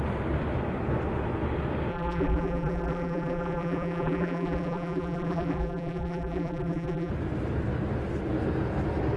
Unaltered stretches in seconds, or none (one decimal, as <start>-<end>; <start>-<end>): 0.0-1.9; 7.1-9.2